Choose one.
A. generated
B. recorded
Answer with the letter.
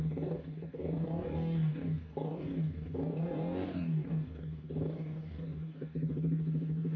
A